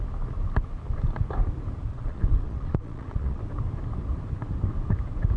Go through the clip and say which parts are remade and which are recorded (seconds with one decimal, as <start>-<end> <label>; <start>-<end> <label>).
0.0-1.9 recorded; 1.9-3.4 remade; 3.4-5.4 recorded